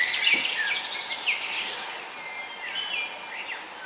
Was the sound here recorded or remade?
recorded